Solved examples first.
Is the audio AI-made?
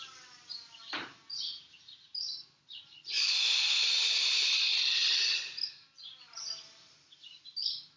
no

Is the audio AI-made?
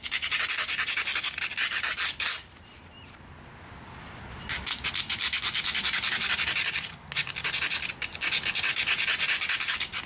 no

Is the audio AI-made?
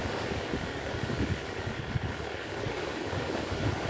yes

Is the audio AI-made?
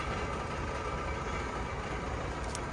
no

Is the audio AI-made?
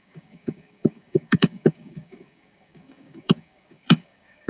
yes